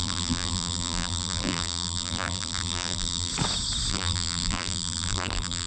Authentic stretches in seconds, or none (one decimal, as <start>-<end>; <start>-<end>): 3.3-3.9